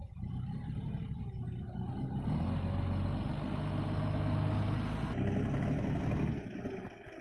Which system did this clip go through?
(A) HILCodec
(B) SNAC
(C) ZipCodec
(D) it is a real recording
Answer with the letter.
D